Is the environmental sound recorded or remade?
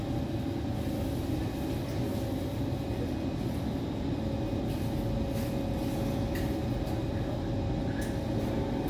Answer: recorded